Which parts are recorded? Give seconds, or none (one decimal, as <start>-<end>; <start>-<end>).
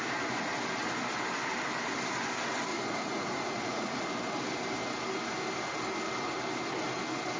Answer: 0.0-2.7; 4.0-7.4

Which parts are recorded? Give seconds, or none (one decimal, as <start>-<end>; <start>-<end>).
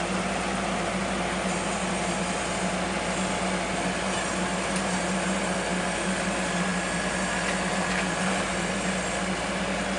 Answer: 0.0-10.0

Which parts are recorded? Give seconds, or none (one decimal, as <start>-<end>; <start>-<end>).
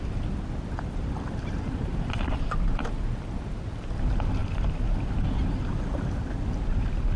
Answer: 0.0-7.2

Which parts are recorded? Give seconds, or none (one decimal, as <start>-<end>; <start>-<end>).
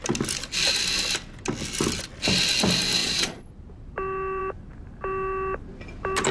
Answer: 0.0-3.0; 3.5-6.3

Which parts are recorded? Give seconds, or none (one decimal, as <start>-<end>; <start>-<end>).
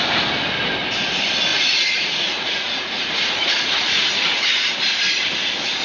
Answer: 0.0-1.5; 4.6-5.8